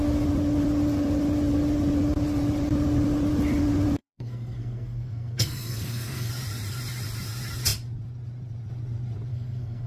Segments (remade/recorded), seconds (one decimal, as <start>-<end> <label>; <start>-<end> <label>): 0.0-4.0 recorded; 4.0-6.3 remade; 6.3-9.3 recorded; 9.3-9.9 remade